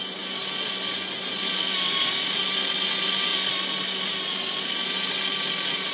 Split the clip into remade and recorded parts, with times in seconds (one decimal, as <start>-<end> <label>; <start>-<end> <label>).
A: 0.0-5.9 recorded